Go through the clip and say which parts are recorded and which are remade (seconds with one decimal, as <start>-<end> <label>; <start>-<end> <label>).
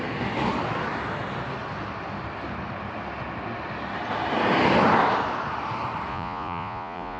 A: 0.0-6.1 recorded; 6.1-7.2 remade